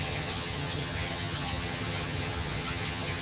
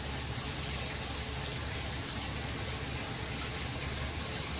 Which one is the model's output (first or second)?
first